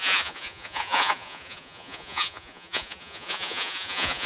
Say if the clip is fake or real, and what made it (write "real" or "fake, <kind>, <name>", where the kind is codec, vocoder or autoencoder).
fake, vocoder, Vocos